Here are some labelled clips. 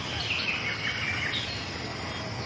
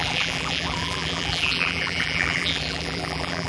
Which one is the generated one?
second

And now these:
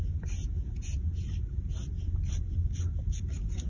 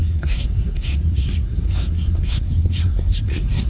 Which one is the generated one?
second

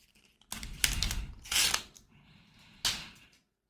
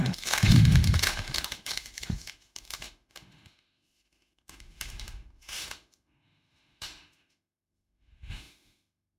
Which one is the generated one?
second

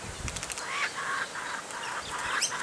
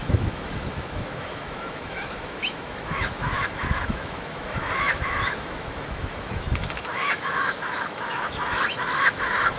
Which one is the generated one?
second